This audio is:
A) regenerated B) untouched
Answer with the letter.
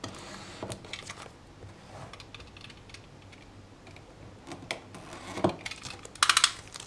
B